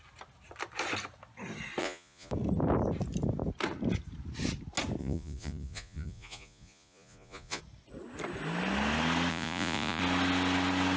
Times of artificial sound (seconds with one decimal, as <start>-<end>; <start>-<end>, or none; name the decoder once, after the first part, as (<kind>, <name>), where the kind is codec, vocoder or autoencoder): 1.8-2.3 (vocoder, Vocos); 5.0-7.6; 9.3-10.0